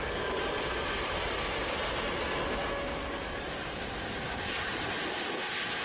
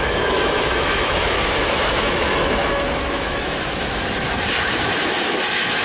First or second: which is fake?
second